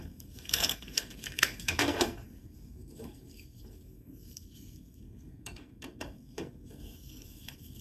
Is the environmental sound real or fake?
fake